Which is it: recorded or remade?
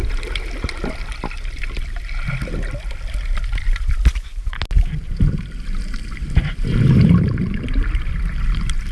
recorded